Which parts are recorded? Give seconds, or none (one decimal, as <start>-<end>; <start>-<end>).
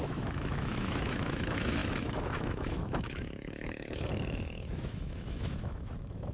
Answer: none